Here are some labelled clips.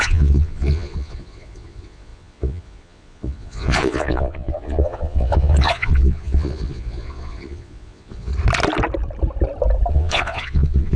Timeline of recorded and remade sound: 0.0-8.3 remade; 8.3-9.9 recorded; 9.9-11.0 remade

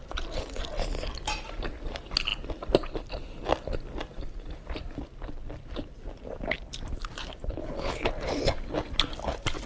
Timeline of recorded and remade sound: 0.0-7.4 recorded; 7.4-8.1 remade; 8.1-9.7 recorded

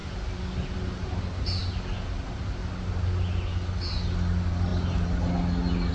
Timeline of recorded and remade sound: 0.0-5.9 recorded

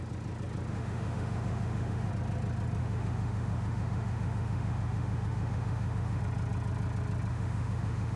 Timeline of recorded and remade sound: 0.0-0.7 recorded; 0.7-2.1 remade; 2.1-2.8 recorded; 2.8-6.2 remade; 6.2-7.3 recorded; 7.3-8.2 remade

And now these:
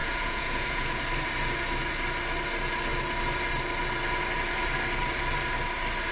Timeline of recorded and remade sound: 0.0-1.0 remade; 1.0-6.1 recorded